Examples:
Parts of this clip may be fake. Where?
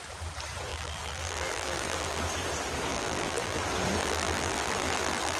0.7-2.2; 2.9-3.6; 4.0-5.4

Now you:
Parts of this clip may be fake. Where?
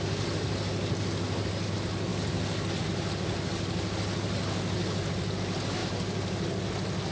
none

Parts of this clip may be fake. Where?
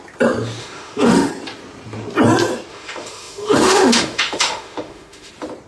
0.6-1.3; 2.7-5.3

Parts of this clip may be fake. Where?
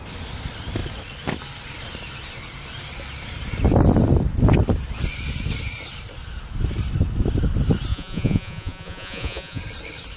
7.9-9.6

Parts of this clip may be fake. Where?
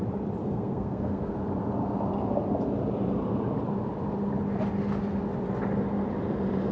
0.4-1.3